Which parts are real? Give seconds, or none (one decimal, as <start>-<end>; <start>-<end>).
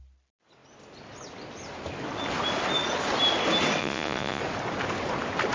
0.0-3.8; 4.4-5.5